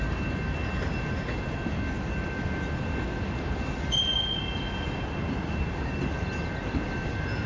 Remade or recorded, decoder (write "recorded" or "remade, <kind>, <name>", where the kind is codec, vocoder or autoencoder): recorded